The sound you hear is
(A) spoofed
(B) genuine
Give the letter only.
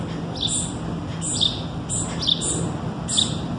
B